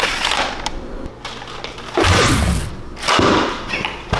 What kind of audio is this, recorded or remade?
remade